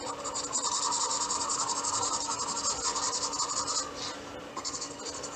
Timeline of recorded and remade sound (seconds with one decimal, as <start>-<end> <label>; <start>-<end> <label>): 0.0-4.5 recorded; 4.5-5.0 remade; 5.0-5.4 recorded